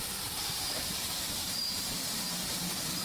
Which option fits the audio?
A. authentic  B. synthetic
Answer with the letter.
B